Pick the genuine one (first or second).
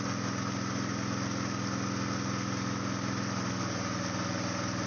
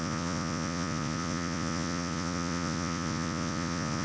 first